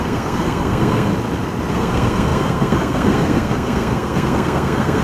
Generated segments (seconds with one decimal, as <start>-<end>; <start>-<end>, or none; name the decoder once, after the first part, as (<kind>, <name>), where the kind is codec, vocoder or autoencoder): 0.0-1.1 (codec, SNAC); 1.7-5.0